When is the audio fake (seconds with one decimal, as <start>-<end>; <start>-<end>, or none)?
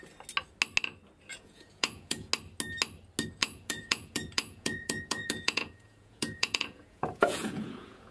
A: 1.3-2.3; 3.4-8.1